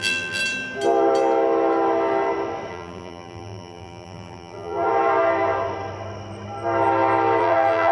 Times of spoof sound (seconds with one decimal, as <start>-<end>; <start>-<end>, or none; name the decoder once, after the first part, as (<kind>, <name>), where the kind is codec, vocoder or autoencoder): 0.0-0.4 (vocoder, BigVGAN v2); 2.7-4.9; 7.4-7.9